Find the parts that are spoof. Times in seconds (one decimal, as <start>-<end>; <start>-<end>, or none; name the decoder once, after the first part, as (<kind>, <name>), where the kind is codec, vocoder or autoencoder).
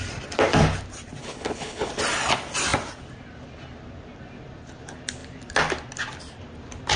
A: 1.2-1.9 (codec, HILCodec)